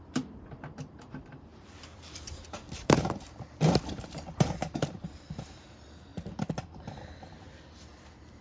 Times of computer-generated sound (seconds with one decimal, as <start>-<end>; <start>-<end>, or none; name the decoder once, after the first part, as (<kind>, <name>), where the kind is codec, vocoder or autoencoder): 0.0-8.4 (vocoder, BigVGAN v2)